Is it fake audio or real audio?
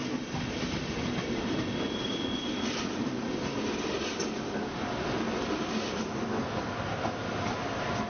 real